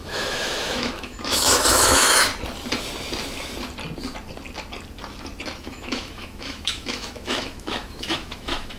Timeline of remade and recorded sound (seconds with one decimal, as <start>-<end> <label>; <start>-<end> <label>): 0.0-2.3 remade; 2.3-5.6 recorded; 5.6-8.8 remade